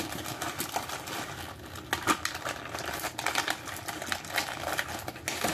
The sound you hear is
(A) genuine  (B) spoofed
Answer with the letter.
A